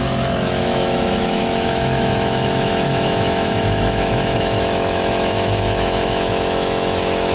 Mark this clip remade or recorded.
remade